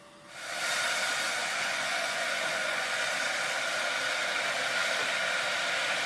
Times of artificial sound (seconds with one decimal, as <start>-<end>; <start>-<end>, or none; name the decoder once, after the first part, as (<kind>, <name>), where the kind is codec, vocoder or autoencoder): 1.4-3.1 (vocoder, Vocos)